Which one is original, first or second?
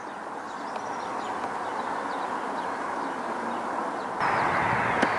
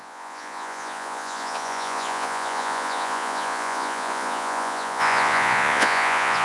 first